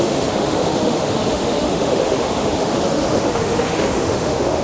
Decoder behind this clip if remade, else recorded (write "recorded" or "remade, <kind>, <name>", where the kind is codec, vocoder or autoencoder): remade, autoencoder, DAC-VAE